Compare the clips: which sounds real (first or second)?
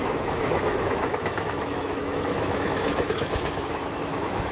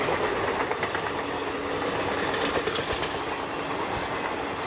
second